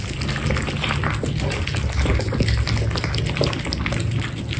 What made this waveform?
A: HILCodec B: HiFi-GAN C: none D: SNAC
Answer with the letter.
C